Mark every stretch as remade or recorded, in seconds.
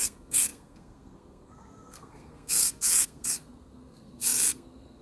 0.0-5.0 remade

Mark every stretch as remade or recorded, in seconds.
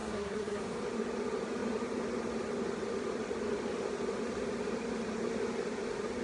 0.0-0.6 remade; 0.6-6.2 recorded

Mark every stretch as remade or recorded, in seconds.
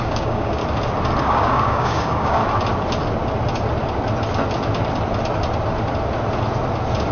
0.0-0.6 remade; 0.6-1.2 recorded; 1.2-2.4 remade; 2.4-7.1 recorded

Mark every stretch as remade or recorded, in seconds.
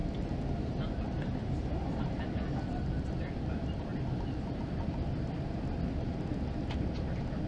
0.0-0.7 recorded; 0.7-7.5 remade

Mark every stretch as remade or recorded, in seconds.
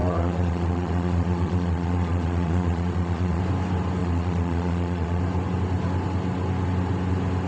0.0-3.4 remade; 3.4-4.0 recorded; 4.0-5.2 remade; 5.2-7.5 recorded